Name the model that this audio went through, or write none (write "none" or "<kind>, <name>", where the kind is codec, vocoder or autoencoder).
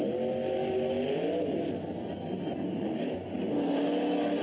none